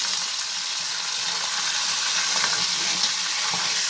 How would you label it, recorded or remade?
recorded